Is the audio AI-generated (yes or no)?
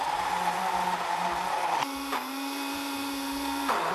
yes